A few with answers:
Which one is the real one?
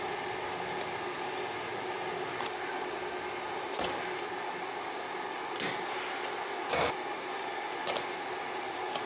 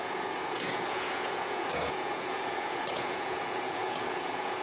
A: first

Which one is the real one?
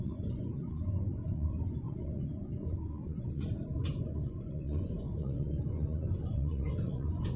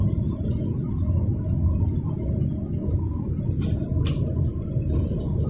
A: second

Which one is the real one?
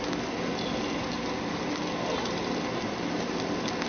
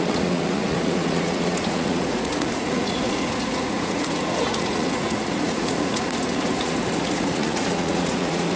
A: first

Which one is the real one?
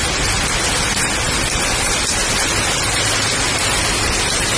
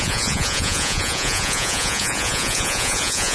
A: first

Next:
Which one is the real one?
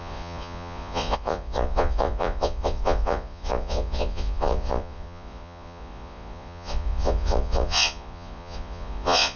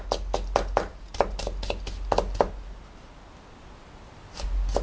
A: second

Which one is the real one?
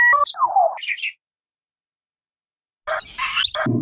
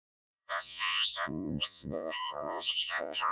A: first